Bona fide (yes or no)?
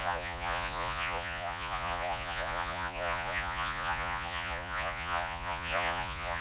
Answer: no